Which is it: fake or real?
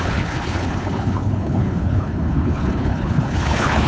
fake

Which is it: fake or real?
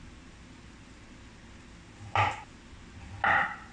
real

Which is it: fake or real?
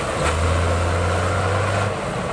real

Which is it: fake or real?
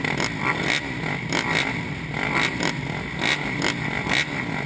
real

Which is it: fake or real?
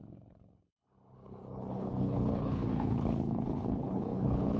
fake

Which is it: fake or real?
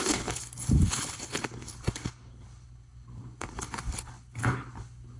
fake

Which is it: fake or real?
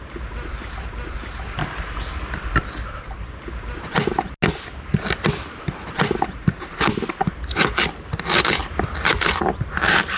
real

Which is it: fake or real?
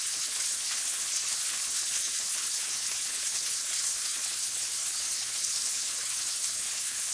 fake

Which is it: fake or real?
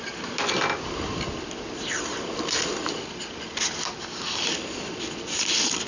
real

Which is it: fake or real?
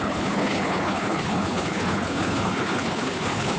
fake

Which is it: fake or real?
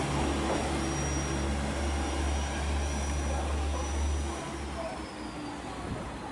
real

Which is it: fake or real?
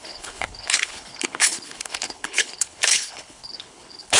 fake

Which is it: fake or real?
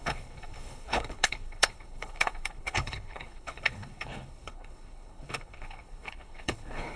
fake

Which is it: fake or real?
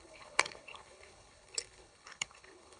fake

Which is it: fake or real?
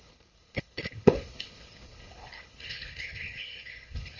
fake